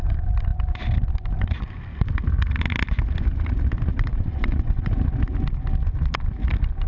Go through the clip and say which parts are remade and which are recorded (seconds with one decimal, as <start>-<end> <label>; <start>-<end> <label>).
0.0-3.9 recorded; 3.9-4.9 remade; 4.9-6.9 recorded